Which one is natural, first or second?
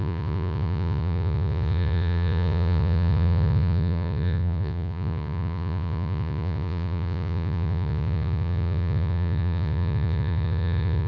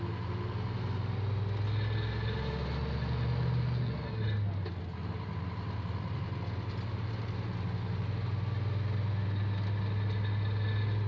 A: second